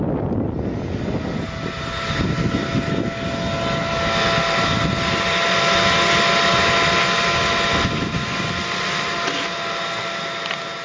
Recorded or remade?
recorded